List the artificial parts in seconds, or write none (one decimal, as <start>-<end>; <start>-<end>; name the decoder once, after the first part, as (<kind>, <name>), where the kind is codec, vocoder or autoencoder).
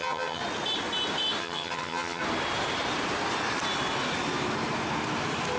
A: 0.0-0.4 (vocoder, HiFi-GAN); 1.4-2.2